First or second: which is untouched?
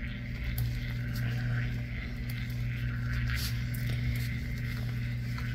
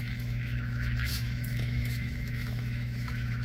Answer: first